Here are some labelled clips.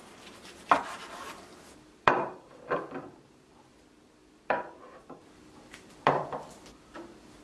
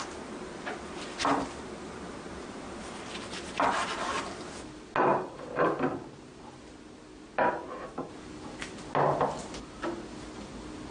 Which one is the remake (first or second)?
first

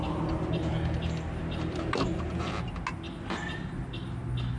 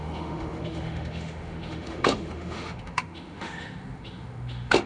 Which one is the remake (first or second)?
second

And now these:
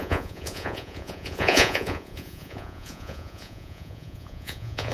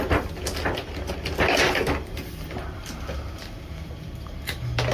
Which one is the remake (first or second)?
first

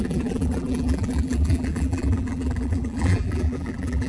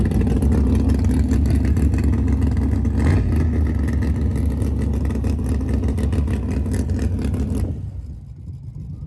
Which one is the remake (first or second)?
first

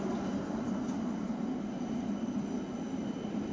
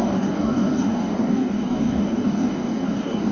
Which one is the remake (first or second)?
second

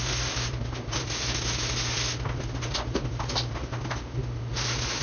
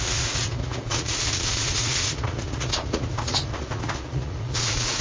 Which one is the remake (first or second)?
second